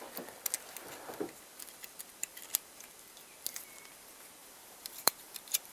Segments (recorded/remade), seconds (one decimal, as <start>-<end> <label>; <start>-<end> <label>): 0.0-4.4 recorded; 4.4-5.7 remade

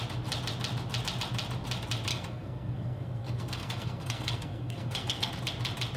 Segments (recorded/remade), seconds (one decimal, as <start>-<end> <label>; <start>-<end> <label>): 0.0-2.1 recorded; 2.1-5.3 remade; 5.3-6.0 recorded

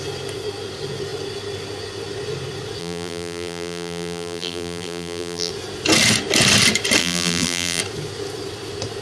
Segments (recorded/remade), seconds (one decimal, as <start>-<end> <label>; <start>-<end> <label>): 0.0-2.8 recorded; 2.8-5.5 remade; 5.5-7.0 recorded; 7.0-7.8 remade; 7.8-9.0 recorded

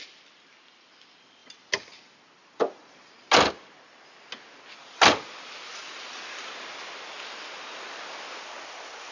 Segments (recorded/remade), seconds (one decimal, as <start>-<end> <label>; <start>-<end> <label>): 0.0-9.1 recorded

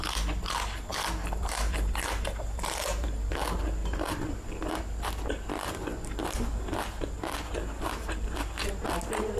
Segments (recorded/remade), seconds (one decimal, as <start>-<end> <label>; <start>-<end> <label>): 0.0-9.4 recorded